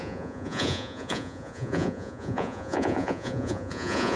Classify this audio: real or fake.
fake